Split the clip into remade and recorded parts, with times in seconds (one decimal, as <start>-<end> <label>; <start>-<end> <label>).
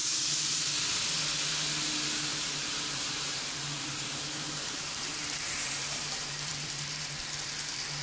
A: 0.0-0.6 remade; 0.6-2.3 recorded; 2.3-7.1 remade; 7.1-8.0 recorded